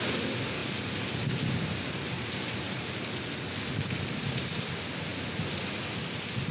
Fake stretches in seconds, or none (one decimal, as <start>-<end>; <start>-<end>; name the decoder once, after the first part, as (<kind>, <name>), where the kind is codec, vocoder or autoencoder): none